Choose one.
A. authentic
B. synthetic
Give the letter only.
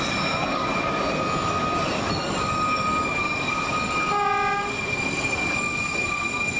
A